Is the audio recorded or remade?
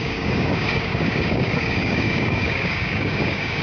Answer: remade